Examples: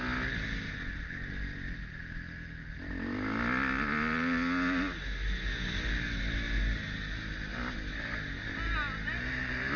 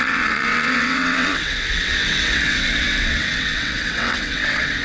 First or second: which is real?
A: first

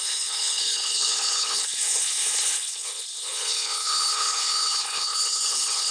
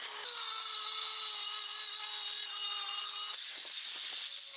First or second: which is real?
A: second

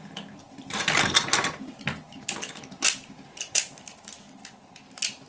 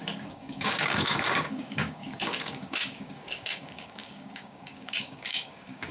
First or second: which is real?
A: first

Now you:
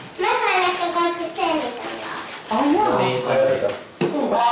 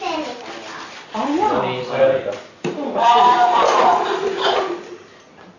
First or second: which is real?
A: first